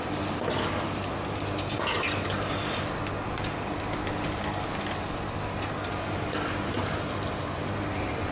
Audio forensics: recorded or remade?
recorded